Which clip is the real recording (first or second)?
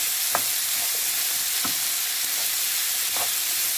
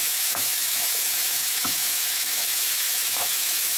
first